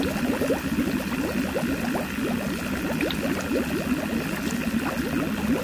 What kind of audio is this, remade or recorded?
recorded